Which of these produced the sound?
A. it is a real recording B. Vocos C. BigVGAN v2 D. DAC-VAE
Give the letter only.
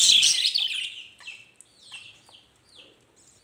A